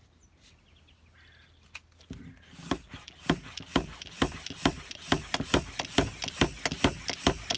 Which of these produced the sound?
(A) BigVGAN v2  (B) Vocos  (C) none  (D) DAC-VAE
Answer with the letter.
C